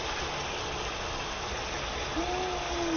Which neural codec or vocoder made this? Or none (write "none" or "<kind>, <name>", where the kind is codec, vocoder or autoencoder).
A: none